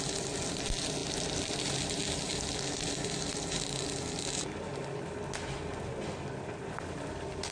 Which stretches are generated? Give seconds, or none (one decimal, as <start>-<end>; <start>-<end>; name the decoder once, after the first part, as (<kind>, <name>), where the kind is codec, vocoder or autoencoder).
none